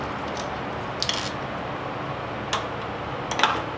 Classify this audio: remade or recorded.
recorded